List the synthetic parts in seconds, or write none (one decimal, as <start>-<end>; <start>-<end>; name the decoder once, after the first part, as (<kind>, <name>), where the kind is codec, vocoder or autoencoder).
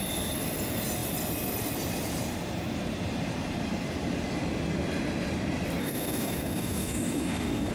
5.8-7.7 (codec, DAC)